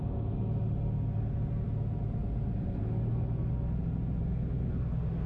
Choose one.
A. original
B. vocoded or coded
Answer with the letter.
A